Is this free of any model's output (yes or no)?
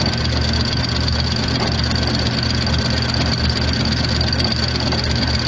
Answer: yes